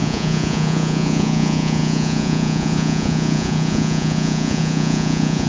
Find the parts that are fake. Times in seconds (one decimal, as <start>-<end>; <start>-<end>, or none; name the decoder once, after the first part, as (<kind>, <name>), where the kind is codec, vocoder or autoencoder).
0.0-5.5 (vocoder, Vocos)